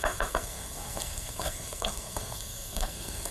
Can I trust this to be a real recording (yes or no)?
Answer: no